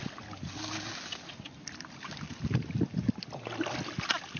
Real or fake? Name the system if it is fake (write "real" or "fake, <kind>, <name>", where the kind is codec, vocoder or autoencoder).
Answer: real